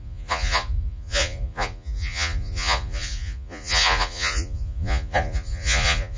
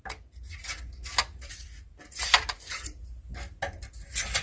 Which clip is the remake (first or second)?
first